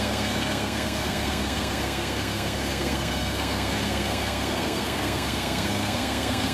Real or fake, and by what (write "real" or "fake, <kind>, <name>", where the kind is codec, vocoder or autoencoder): fake, codec, SNAC